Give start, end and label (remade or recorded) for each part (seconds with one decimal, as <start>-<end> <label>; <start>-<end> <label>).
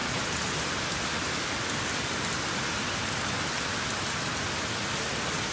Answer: 0.0-1.3 remade; 1.3-5.5 recorded